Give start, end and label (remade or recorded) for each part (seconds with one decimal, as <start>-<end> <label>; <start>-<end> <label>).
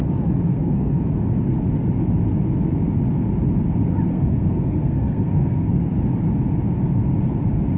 0.0-0.5 recorded; 0.5-1.0 remade; 1.0-4.1 recorded; 4.1-5.9 remade; 5.9-7.8 recorded